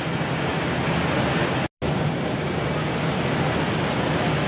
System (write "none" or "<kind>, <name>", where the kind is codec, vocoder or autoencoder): none